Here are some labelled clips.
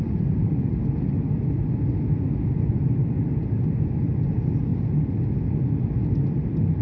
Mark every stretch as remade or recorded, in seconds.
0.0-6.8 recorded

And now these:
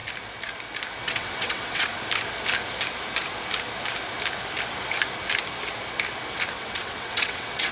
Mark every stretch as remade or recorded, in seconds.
0.0-1.0 recorded; 1.0-1.9 remade; 1.9-6.5 recorded; 6.5-7.7 remade

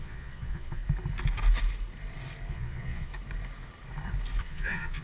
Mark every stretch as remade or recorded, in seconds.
0.0-0.8 remade; 0.8-2.5 recorded; 2.5-3.1 remade; 3.1-4.4 recorded; 4.4-5.0 remade